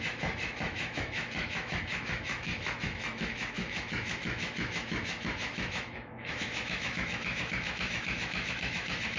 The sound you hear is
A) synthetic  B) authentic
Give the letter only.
A